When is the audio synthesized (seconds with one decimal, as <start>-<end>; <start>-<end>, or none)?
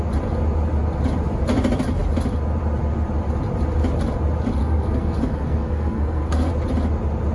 4.6-6.5